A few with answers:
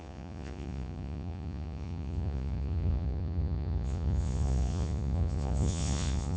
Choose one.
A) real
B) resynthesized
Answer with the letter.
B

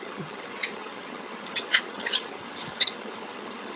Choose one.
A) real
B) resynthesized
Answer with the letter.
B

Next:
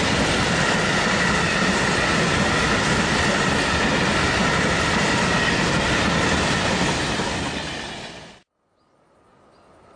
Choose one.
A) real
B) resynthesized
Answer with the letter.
A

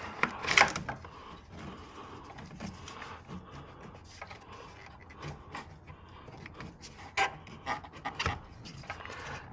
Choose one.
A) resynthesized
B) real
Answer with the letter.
B